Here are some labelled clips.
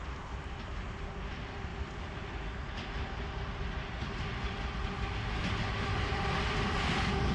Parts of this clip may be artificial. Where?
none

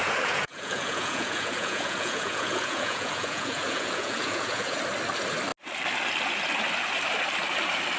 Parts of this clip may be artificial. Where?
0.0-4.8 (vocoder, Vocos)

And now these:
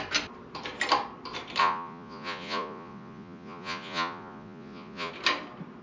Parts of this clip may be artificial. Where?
1.6-5.1 (vocoder, Vocos)

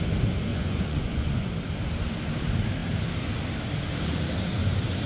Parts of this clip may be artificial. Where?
0.5-1.5 (vocoder, Vocos)